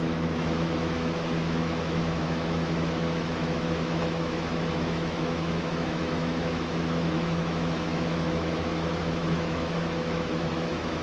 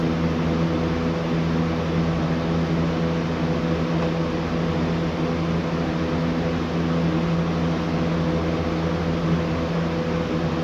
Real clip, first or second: second